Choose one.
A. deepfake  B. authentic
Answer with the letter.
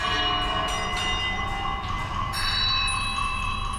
B